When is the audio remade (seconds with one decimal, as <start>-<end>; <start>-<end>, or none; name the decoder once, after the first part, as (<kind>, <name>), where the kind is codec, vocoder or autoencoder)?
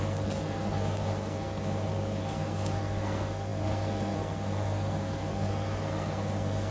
0.0-6.7 (codec, SNAC)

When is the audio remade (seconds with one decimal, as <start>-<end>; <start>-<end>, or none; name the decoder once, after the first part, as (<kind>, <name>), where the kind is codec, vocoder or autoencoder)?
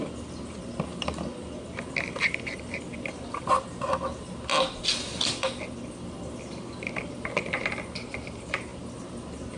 none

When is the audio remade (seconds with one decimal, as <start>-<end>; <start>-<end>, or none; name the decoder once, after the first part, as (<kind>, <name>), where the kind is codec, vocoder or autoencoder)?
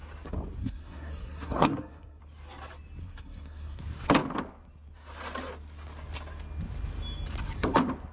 0.6-2.2 (codec, SNAC); 3.0-3.8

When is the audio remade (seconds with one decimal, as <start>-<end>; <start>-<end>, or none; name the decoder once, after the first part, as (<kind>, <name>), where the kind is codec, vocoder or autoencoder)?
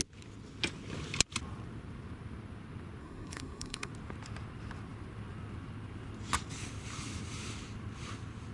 3.0-3.9 (codec, SNAC)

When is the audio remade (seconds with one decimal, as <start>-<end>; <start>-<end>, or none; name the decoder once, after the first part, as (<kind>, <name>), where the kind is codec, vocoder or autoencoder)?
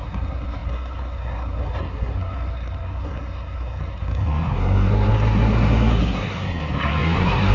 0.0-7.5 (codec, SNAC)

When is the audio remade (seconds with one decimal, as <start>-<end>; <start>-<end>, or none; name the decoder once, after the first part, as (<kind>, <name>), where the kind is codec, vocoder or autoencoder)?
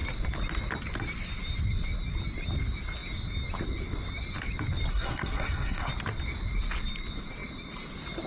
4.9-5.9 (codec, SNAC)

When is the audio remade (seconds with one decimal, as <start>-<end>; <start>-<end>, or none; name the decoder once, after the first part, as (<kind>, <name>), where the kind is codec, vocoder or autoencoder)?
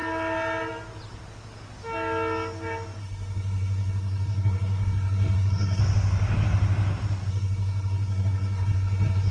3.0-5.8 (codec, SNAC); 7.3-9.3